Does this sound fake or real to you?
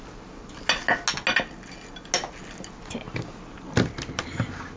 real